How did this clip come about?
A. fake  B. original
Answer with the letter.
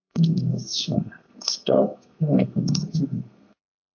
A